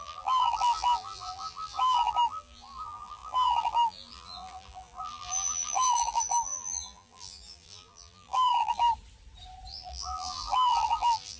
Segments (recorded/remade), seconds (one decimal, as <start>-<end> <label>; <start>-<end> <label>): 0.0-8.9 remade; 8.9-9.7 recorded; 9.7-11.4 remade

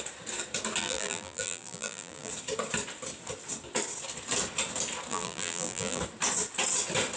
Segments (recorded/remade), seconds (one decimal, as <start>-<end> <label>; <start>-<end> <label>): 0.0-0.8 recorded; 0.8-2.3 remade; 2.3-5.1 recorded; 5.1-6.0 remade; 6.0-7.2 recorded

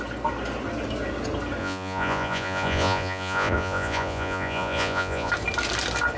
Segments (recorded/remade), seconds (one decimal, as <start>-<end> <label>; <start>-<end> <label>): 0.0-1.6 recorded; 1.6-5.3 remade; 5.3-6.2 recorded

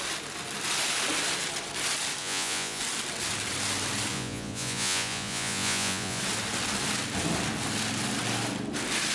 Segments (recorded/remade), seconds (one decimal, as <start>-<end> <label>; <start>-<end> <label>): 0.0-2.2 recorded; 2.2-2.8 remade; 2.8-4.1 recorded; 4.1-6.2 remade; 6.2-9.1 recorded

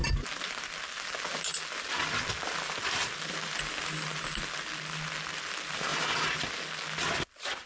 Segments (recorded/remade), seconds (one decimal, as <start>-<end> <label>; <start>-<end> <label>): 0.0-7.7 recorded

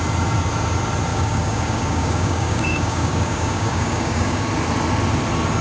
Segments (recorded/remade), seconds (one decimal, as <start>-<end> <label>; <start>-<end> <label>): 0.0-1.1 recorded; 1.1-4.5 remade; 4.5-5.6 recorded

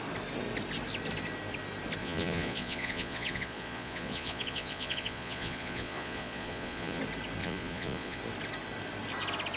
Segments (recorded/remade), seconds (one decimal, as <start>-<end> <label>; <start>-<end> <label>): 0.0-2.0 recorded; 2.0-7.0 remade; 7.0-7.4 recorded; 7.4-8.2 remade; 8.2-9.6 recorded

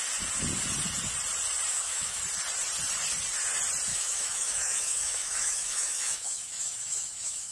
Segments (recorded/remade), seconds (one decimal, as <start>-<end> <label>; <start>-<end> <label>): 0.0-1.7 recorded; 1.7-2.2 remade; 2.2-3.9 recorded; 3.9-7.5 remade